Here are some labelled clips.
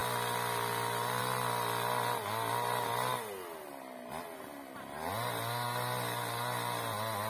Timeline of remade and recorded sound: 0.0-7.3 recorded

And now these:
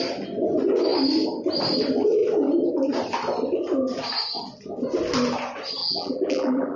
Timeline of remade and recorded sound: 0.0-5.8 recorded; 5.8-6.8 remade

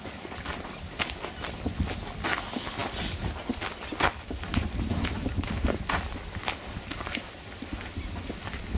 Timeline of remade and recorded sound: 0.0-8.8 recorded

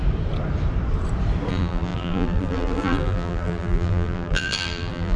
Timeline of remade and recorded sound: 0.0-1.5 recorded; 1.5-5.2 remade

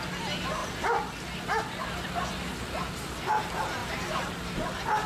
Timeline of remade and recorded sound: 0.0-3.8 recorded; 3.8-5.1 remade

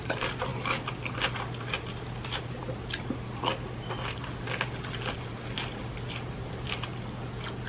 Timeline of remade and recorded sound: 0.0-7.7 recorded

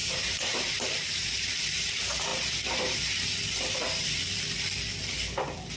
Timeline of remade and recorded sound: 0.0-1.9 remade; 1.9-2.3 recorded; 2.3-3.0 remade; 3.0-5.8 recorded

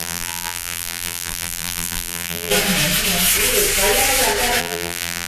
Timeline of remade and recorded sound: 0.0-2.5 remade; 2.5-4.6 recorded; 4.6-5.3 remade